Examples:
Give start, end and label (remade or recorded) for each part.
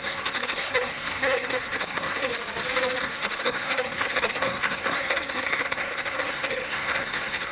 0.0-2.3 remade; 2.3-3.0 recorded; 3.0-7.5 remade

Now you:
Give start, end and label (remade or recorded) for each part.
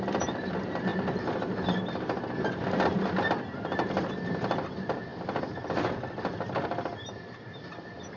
0.0-8.2 recorded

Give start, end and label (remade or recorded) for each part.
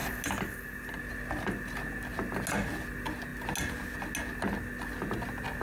0.0-5.6 recorded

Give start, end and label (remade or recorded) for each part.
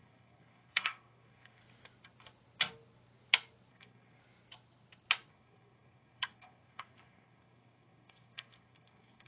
0.0-1.6 remade; 1.6-3.7 recorded; 3.7-4.2 remade; 4.2-5.3 recorded; 5.3-9.3 remade